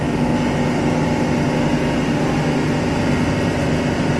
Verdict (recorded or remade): recorded